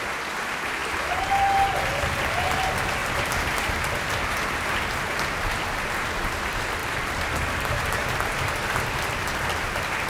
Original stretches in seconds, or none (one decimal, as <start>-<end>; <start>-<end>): 0.0-3.0; 4.6-6.8; 9.4-10.1